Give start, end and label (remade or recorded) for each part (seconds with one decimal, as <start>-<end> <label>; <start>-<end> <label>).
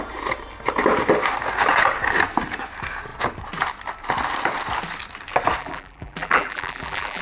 0.0-5.6 recorded; 5.6-7.2 remade